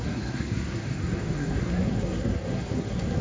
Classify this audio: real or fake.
fake